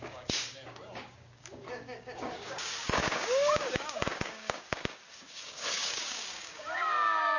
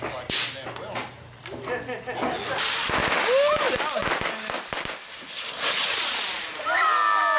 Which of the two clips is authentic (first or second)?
second